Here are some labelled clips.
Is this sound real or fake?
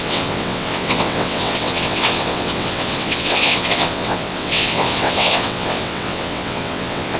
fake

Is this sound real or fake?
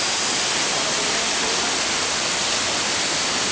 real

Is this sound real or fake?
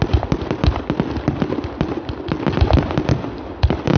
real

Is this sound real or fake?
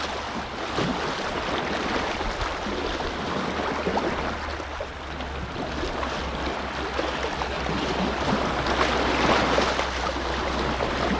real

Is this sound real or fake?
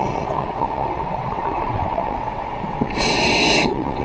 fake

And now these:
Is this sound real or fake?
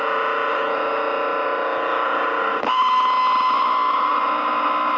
real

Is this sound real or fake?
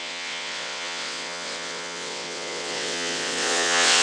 fake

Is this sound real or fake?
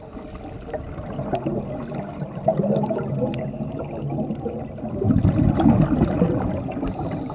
real